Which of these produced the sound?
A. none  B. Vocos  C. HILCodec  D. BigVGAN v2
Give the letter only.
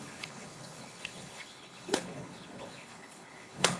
C